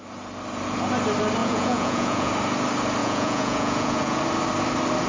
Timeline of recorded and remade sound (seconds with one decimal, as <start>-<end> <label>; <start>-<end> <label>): 0.0-1.4 recorded; 1.4-2.3 remade; 2.3-3.0 recorded; 3.0-4.2 remade; 4.2-5.1 recorded